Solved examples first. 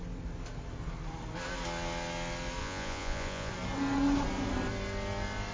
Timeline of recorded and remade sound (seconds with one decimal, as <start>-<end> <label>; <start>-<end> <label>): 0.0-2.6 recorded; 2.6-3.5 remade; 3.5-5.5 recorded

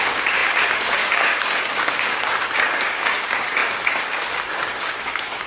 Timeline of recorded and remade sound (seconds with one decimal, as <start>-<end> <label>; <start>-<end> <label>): 0.0-5.5 remade

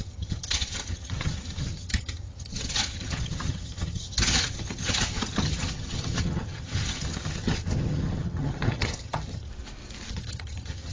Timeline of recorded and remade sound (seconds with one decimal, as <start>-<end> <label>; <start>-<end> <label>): 0.0-9.5 remade; 9.5-10.1 recorded; 10.1-10.9 remade

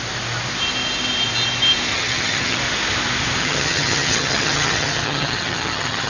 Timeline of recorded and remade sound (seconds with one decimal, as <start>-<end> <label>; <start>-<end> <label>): 0.0-1.9 recorded; 1.9-2.6 remade; 2.6-3.4 recorded; 3.4-6.1 remade

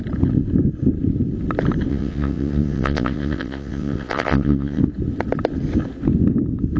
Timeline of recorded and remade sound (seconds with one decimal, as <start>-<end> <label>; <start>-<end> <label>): 0.0-1.9 recorded; 1.9-4.8 remade; 4.8-6.8 recorded